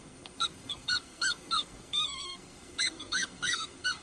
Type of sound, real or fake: fake